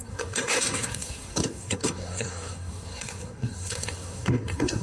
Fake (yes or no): yes